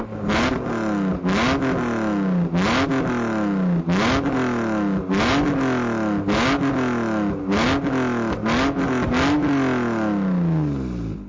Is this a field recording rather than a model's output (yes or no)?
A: yes